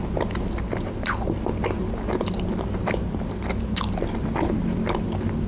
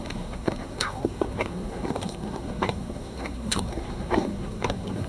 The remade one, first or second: second